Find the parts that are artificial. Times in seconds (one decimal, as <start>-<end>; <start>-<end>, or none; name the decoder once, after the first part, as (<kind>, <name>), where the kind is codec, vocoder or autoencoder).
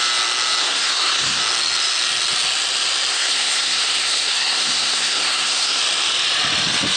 0.6-1.4 (codec, SNAC); 3.1-5.8